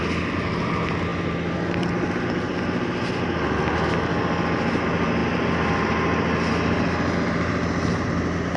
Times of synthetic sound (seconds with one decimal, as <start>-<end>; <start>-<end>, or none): none